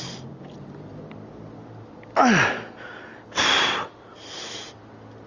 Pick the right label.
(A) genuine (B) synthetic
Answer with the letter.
A